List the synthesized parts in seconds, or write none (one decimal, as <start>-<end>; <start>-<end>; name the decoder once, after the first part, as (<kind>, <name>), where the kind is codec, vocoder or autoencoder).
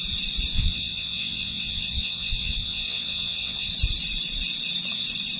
0.5-3.7 (vocoder, WaveNeXt)